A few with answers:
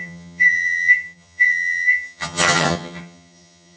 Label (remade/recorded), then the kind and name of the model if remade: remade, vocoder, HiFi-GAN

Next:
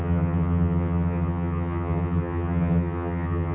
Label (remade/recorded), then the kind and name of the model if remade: remade, vocoder, HiFi-GAN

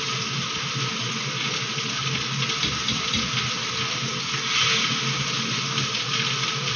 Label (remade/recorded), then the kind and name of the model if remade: recorded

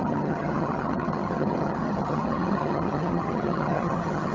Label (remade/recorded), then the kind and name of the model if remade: remade, vocoder, HiFi-GAN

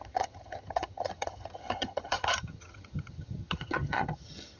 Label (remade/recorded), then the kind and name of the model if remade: remade, vocoder, HiFi-GAN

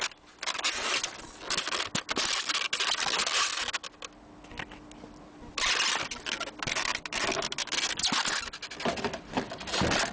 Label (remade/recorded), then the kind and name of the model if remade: recorded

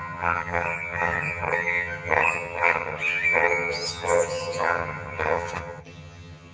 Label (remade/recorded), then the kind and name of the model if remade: remade, vocoder, HiFi-GAN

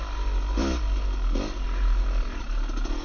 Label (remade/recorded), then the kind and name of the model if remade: recorded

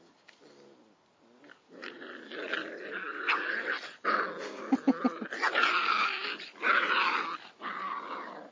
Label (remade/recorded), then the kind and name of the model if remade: recorded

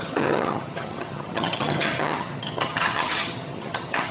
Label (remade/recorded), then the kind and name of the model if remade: remade, vocoder, HiFi-GAN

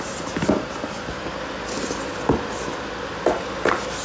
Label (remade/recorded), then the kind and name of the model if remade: recorded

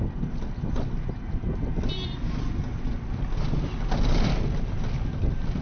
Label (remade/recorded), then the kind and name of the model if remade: recorded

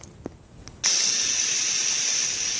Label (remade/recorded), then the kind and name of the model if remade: recorded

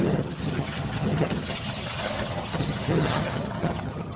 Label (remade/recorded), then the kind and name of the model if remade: remade, vocoder, HiFi-GAN